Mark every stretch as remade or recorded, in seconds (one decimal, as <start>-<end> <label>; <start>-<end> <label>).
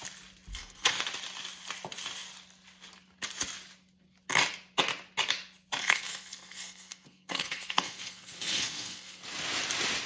0.0-0.5 recorded; 0.5-1.0 remade; 1.0-5.8 recorded; 5.8-9.2 remade; 9.2-10.1 recorded